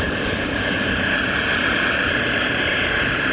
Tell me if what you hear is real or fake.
fake